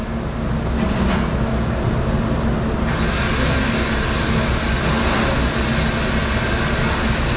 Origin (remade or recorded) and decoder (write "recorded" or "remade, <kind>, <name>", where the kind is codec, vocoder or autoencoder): recorded